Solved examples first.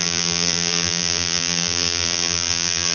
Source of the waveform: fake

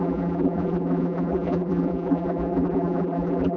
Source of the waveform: fake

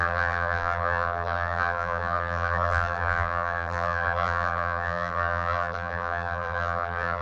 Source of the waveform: fake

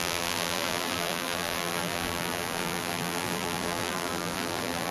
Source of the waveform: fake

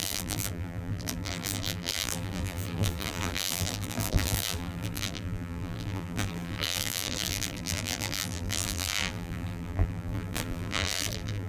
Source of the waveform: fake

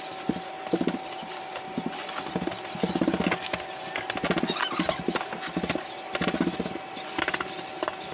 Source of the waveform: real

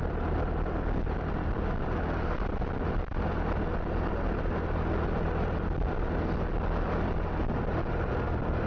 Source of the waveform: real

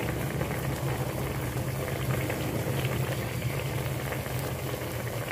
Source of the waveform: real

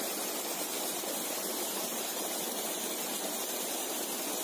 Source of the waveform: fake